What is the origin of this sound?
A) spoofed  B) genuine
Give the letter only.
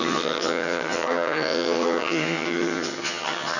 A